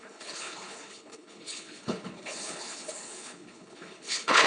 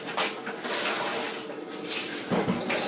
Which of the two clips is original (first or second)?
second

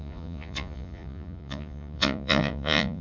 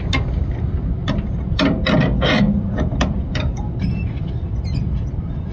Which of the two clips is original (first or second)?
second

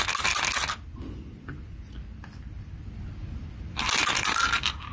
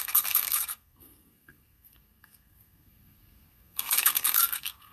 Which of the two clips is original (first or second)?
first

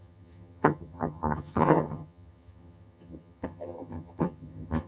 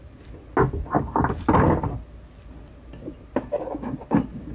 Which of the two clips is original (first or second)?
second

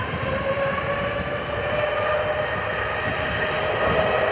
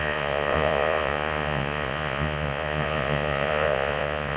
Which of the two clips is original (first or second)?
first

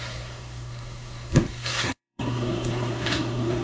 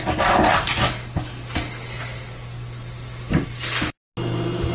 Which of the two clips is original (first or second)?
second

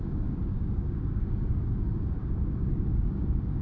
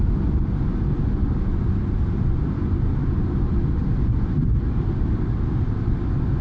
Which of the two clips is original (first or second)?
second